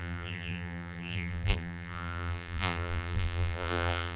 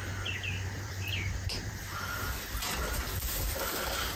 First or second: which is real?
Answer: second